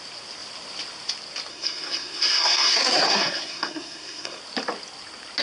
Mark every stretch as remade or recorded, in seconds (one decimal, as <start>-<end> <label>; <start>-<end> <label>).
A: 0.0-1.5 recorded; 1.5-4.4 remade; 4.4-5.4 recorded